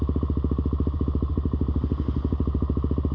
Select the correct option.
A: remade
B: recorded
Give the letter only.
B